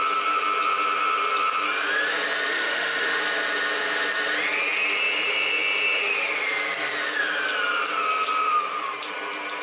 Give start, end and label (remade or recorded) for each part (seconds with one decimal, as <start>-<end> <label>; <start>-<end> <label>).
0.0-2.5 recorded; 2.5-3.2 remade; 3.2-9.6 recorded

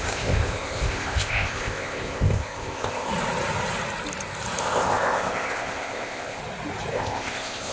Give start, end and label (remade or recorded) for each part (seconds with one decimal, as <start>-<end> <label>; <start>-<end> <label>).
0.0-3.1 remade; 3.1-4.6 recorded; 4.6-6.4 remade; 6.4-6.9 recorded; 6.9-7.7 remade

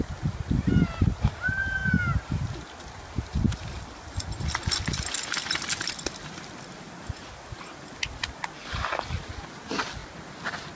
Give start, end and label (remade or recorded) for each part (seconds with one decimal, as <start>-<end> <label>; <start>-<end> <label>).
0.0-10.8 recorded